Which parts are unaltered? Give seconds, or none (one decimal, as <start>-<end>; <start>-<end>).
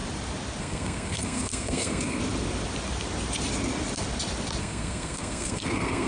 0.0-0.6; 2.2-4.6